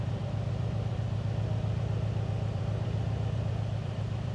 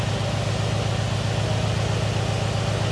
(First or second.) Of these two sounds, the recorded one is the second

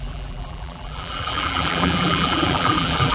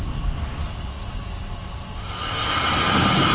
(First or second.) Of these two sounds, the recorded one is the second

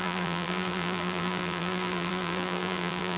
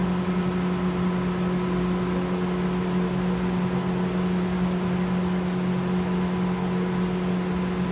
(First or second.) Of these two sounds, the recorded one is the second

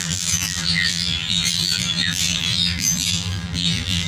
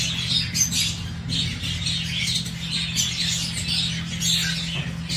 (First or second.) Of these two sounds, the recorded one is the second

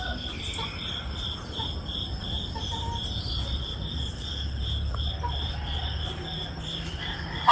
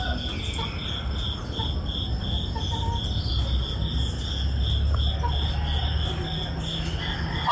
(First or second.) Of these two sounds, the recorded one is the second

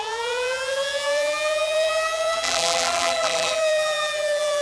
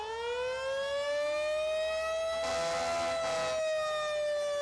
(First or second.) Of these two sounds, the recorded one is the second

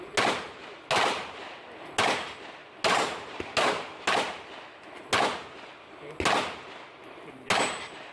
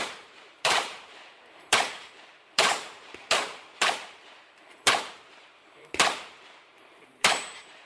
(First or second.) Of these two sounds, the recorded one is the first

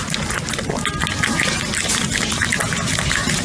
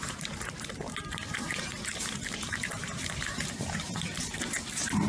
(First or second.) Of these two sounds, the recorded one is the first